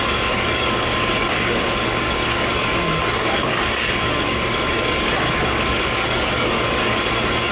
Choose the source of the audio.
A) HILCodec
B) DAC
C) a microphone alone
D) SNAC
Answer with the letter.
B